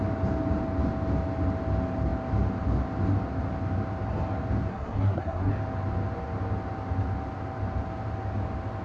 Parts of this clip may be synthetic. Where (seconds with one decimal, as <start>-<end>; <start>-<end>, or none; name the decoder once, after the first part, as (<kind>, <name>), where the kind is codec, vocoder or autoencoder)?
4.7-5.5 (codec, SNAC)